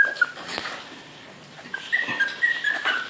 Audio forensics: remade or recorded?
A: recorded